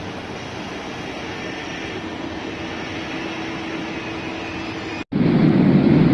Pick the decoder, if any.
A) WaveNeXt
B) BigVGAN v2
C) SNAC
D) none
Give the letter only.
D